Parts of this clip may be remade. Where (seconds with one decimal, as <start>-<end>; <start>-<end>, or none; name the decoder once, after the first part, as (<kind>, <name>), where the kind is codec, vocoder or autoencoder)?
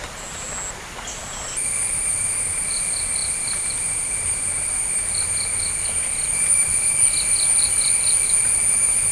none